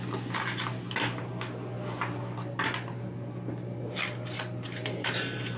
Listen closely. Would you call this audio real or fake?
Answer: real